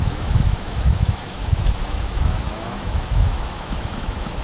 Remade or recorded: remade